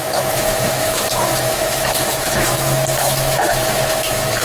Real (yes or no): no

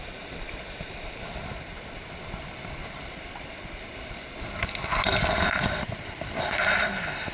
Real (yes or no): yes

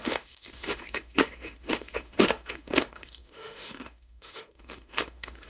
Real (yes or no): no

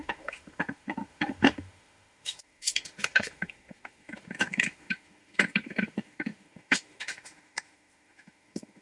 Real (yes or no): no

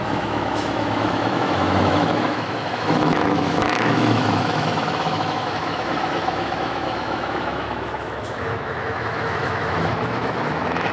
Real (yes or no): no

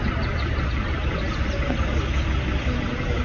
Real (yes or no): yes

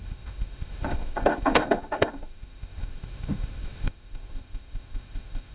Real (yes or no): no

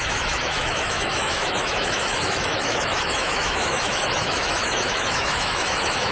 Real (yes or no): no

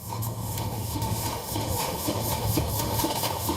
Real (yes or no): no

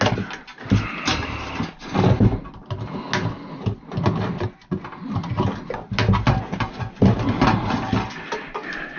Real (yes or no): yes